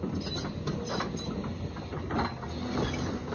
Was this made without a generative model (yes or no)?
yes